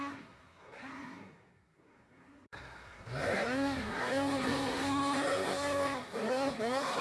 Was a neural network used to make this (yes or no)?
yes